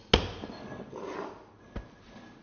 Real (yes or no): yes